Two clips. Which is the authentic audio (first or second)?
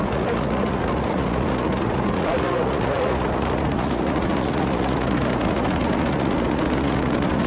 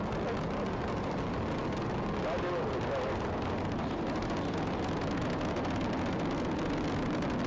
second